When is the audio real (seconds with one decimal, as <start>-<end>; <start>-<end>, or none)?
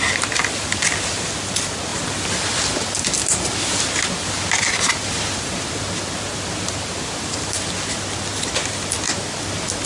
0.0-9.9